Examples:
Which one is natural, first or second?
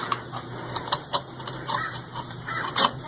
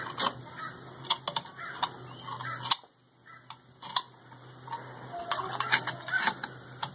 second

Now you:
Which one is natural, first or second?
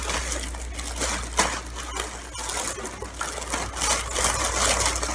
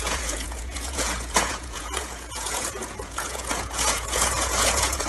first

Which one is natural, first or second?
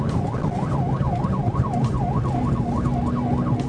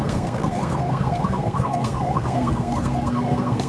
first